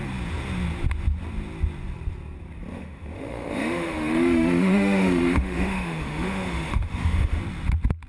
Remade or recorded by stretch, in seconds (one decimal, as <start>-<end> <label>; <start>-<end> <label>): 0.0-2.7 recorded; 2.7-7.4 remade; 7.4-8.1 recorded